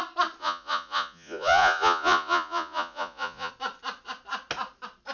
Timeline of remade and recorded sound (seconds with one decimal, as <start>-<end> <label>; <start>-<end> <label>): 0.0-0.4 recorded; 0.4-3.5 remade; 3.5-5.1 recorded